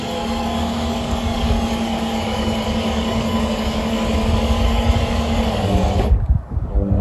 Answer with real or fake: fake